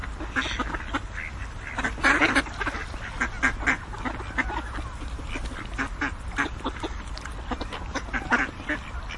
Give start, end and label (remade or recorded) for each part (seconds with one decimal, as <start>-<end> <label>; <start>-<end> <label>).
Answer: 0.0-9.2 recorded